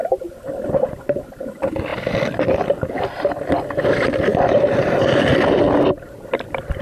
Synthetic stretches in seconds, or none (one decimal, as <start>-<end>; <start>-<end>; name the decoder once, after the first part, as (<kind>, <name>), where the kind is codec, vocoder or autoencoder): 1.9-5.6 (vocoder, BigVGAN v2)